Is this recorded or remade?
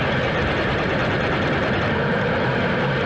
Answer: recorded